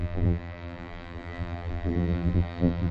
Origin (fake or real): fake